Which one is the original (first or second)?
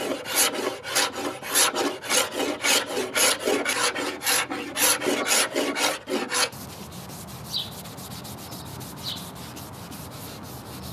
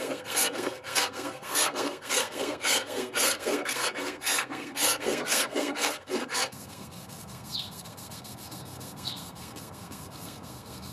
first